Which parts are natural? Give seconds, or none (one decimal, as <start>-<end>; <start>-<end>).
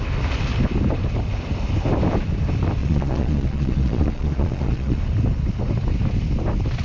0.0-2.8; 5.0-6.8